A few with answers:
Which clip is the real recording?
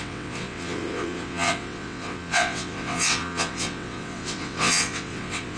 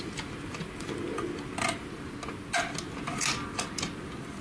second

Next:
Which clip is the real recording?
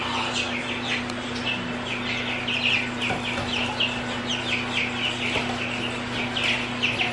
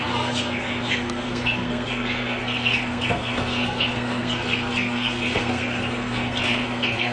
first